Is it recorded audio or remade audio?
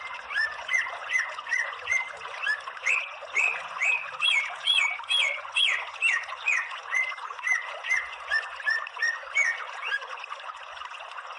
remade